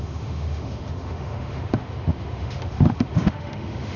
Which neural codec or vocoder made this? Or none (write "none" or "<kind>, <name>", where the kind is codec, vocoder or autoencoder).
autoencoder, DAC-VAE